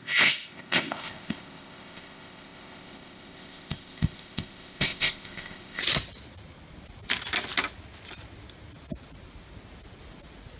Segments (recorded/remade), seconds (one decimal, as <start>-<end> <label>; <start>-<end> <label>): 0.0-5.8 remade; 5.8-10.6 recorded